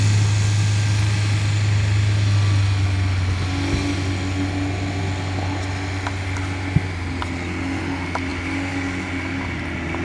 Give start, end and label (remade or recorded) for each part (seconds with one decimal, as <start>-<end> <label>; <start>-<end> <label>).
0.0-10.0 recorded